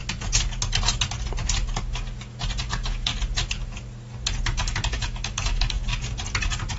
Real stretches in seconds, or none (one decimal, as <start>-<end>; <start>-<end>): 0.0-2.6; 3.1-4.4; 5.9-6.8